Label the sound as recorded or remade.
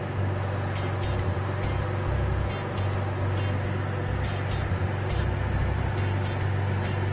recorded